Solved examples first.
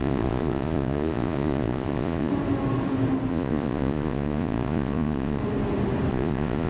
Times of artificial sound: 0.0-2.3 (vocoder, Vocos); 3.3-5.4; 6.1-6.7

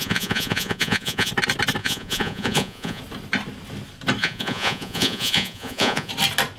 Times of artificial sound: 0.0-1.3 (vocoder, Vocos); 1.8-3.0; 4.2-6.1

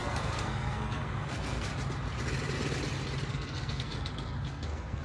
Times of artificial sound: 0.0-1.7 (codec, SNAC); 3.3-5.0